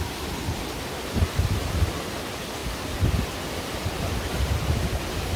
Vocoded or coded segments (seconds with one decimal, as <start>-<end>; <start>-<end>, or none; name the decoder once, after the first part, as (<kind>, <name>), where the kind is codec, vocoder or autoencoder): none